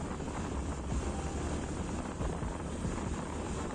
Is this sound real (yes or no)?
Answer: no